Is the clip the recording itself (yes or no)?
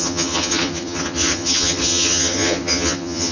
no